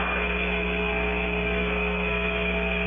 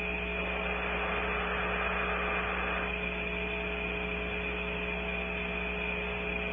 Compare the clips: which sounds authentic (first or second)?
second